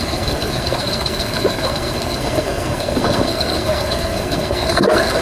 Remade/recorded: remade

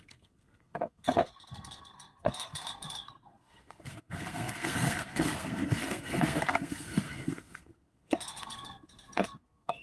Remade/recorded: remade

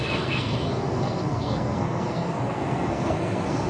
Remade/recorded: remade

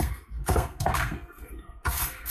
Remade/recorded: remade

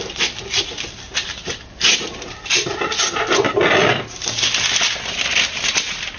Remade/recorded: recorded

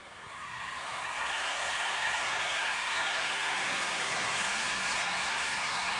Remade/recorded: remade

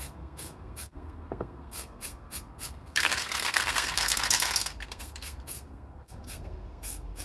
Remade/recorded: remade